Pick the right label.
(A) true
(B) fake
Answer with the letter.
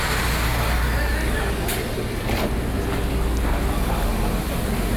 A